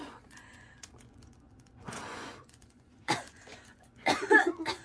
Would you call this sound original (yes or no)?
no